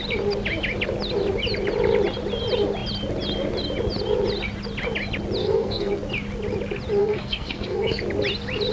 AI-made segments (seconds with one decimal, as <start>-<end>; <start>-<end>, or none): 5.4-5.9; 7.0-8.0